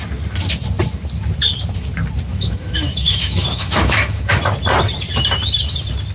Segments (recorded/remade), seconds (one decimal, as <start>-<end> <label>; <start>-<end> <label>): 0.0-2.3 recorded; 2.3-4.3 remade; 4.3-6.1 recorded